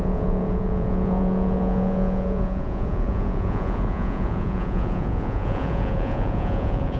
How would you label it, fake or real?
fake